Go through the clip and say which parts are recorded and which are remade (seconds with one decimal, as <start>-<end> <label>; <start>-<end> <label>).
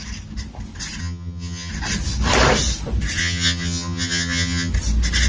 0.0-1.0 recorded; 1.0-1.7 remade; 1.7-3.2 recorded; 3.2-4.7 remade; 4.7-5.3 recorded